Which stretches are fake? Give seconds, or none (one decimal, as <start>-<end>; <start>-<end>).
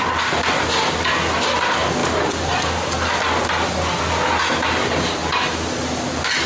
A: none